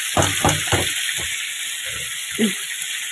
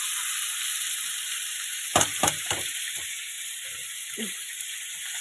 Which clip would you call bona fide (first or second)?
first